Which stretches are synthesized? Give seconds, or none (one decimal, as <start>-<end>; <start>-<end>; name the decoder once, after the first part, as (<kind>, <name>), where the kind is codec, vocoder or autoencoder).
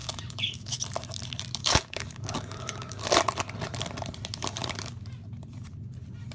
0.0-0.8 (codec, DAC); 1.6-3.0